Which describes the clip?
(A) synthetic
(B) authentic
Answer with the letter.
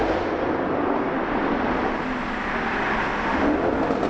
B